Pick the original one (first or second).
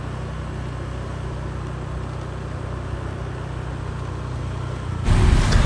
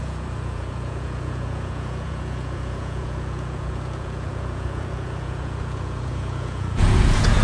first